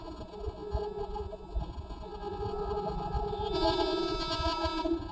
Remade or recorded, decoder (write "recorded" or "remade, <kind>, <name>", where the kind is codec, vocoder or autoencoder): remade, vocoder, Vocos